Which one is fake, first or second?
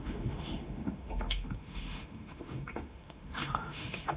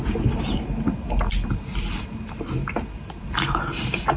first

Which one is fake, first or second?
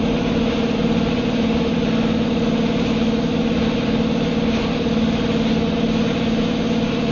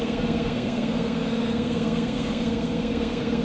second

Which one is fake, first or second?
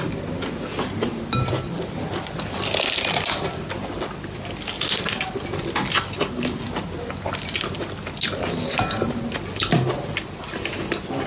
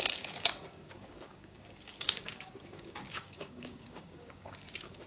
second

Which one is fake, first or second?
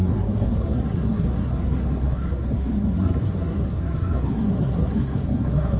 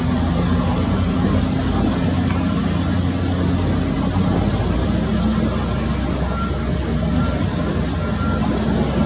first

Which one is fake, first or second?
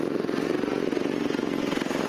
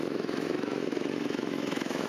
second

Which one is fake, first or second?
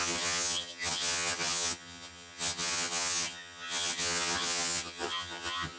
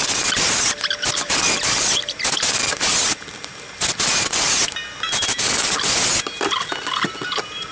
first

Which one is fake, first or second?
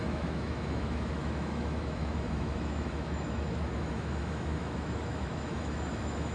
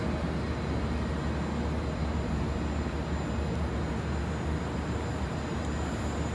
first